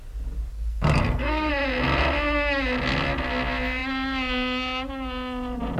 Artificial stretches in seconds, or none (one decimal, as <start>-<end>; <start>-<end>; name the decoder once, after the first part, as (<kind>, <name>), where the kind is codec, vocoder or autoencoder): 0.5-1.5 (codec, SNAC)